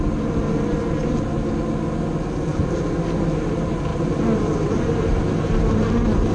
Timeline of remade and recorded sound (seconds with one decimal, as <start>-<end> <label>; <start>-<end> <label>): 0.0-6.3 recorded